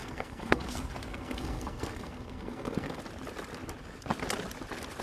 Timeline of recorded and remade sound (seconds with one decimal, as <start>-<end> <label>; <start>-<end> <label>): 0.0-3.0 remade; 3.0-5.0 recorded